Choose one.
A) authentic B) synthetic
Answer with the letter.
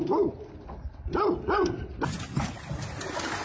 A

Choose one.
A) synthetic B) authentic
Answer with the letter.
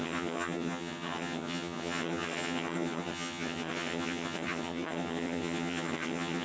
A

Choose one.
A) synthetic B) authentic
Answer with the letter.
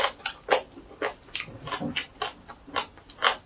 B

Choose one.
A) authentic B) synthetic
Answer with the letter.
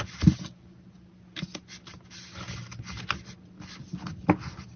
A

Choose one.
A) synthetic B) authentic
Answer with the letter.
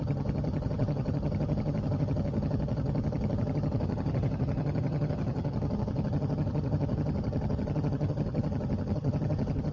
A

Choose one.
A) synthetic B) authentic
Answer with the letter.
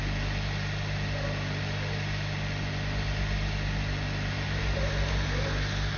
B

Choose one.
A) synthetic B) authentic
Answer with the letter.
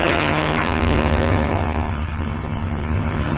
A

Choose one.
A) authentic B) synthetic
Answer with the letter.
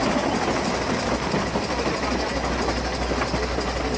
A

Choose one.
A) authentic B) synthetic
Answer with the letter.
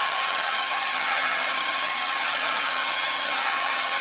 B